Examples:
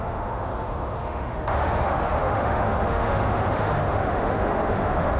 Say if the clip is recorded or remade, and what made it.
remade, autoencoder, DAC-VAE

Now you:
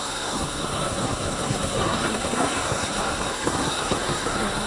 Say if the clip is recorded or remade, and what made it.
remade, codec, SNAC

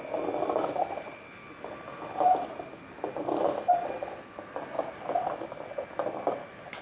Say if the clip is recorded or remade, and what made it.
recorded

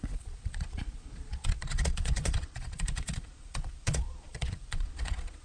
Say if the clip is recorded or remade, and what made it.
remade, vocoder, Vocos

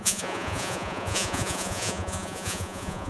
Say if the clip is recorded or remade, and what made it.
remade, vocoder, Vocos